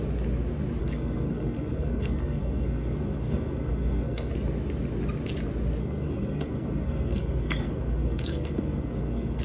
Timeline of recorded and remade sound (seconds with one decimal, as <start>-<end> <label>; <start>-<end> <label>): 0.0-0.8 recorded; 0.8-4.3 remade; 4.3-5.8 recorded; 5.8-9.4 remade